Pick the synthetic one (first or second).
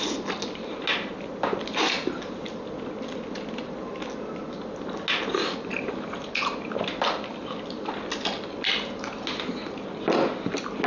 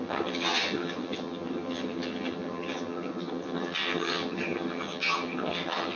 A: second